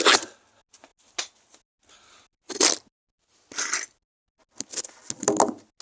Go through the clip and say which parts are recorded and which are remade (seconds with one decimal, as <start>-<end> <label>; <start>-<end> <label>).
0.0-5.8 recorded